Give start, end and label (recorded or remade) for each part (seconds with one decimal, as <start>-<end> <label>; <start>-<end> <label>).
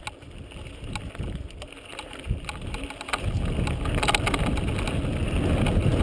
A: 0.0-1.9 recorded; 1.9-3.3 remade; 3.3-6.0 recorded